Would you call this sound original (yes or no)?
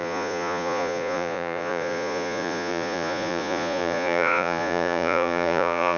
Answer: no